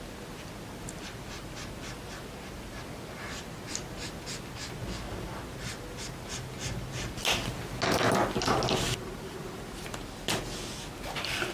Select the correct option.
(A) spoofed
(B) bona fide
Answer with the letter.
B